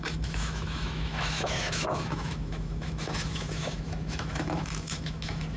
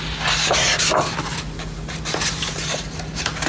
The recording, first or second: second